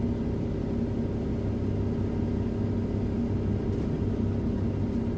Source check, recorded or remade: recorded